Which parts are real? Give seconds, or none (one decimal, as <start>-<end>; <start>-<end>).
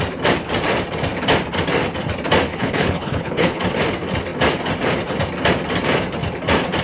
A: 0.0-2.5; 3.6-6.8